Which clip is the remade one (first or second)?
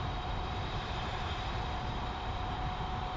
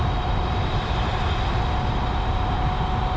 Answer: first